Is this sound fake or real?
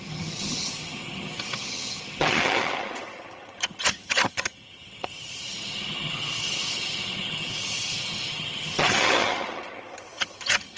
fake